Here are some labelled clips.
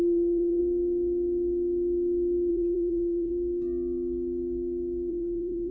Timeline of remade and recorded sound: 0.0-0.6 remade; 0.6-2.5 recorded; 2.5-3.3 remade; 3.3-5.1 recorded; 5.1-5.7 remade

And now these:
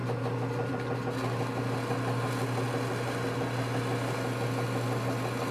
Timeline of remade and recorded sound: 0.0-5.5 recorded